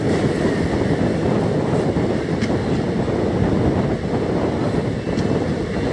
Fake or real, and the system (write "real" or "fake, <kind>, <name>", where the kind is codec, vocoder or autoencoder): real